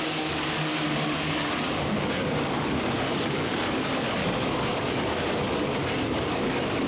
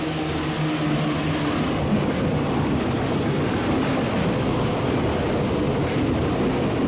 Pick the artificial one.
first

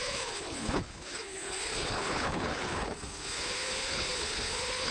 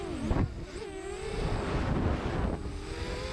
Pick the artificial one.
first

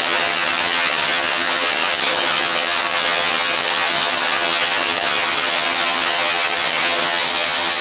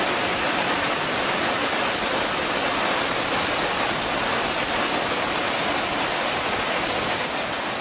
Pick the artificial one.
first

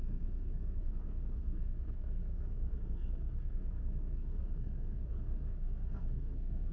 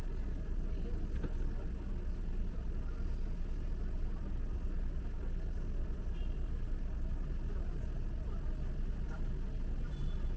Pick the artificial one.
first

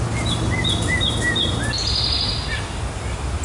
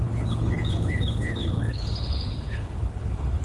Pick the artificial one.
second